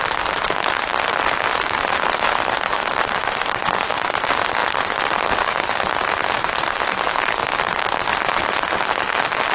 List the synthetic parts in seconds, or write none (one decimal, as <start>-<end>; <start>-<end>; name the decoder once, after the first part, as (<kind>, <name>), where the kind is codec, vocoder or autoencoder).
none